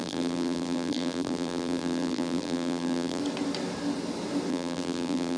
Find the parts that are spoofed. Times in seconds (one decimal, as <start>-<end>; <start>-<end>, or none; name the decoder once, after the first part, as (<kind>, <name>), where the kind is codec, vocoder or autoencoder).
0.0-3.2 (vocoder, BigVGAN v2); 4.5-5.4